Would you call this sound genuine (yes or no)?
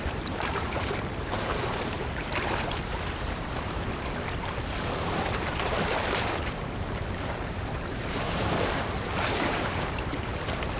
no